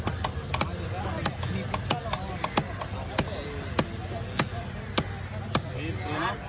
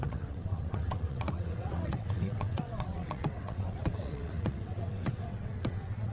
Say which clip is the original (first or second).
first